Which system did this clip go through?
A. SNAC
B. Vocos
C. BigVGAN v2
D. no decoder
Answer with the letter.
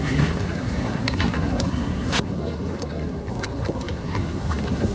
A